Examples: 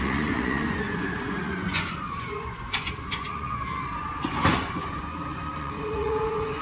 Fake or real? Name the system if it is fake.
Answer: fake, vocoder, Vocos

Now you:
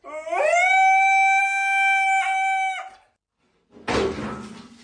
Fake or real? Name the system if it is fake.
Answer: real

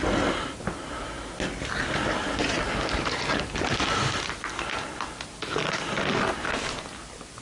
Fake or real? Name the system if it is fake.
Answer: real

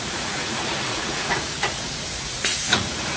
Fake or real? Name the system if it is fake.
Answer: fake, vocoder, Vocos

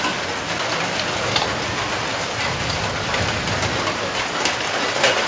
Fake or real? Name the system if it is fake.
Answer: real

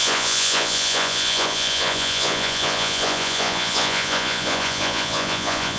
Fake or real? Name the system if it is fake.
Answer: fake, vocoder, Vocos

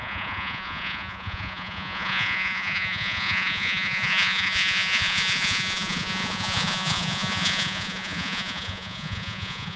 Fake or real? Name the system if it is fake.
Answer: fake, vocoder, Vocos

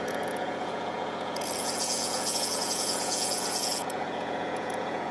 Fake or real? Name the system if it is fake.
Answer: fake, vocoder, Vocos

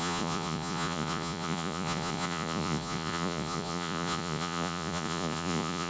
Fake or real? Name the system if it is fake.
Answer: fake, vocoder, Vocos